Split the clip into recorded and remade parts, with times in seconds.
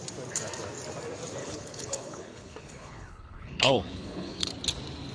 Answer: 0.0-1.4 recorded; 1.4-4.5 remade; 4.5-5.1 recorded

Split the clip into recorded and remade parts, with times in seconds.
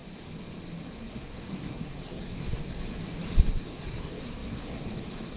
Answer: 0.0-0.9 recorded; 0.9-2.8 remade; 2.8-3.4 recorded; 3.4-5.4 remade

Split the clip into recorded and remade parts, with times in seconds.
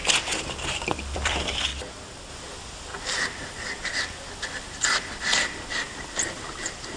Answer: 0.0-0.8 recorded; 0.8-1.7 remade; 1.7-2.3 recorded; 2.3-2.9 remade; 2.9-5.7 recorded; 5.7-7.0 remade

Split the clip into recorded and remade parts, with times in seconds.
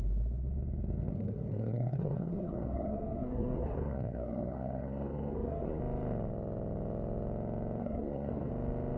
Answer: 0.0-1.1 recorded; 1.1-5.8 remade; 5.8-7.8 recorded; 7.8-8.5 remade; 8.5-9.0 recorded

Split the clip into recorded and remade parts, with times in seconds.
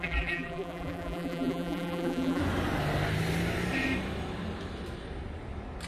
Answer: 0.0-2.4 remade; 2.4-5.9 recorded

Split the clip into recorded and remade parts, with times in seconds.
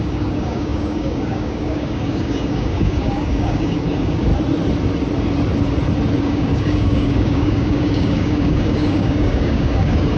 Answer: 0.0-4.3 remade; 4.3-6.2 recorded; 6.2-10.2 remade